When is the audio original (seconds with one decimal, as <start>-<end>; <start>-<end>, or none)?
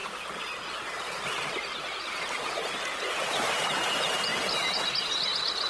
0.0-1.7; 2.6-4.3; 4.9-5.7